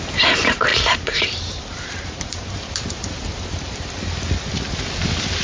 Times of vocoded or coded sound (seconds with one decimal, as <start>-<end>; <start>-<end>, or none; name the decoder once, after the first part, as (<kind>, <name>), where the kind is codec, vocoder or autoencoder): 0.7-3.9 (vocoder, BigVGAN v2)